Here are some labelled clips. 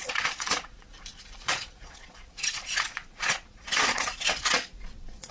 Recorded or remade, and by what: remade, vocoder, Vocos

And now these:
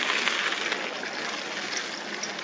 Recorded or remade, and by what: recorded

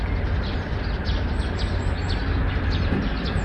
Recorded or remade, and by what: recorded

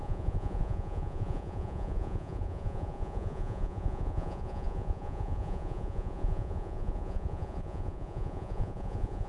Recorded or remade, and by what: remade, vocoder, Vocos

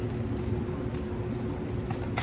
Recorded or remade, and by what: recorded